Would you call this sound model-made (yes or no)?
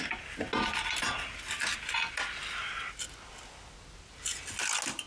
no